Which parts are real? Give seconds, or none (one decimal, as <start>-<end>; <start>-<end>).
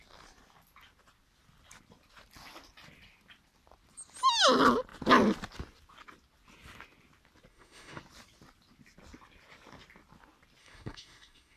0.0-7.5; 8.0-10.6